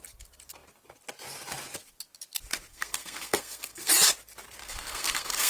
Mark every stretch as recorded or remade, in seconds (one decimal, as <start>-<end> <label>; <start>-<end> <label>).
0.0-2.7 recorded; 2.7-3.9 remade; 3.9-4.6 recorded; 4.6-5.5 remade